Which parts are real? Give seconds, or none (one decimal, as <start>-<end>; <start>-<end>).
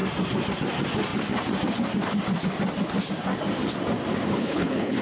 0.0-4.3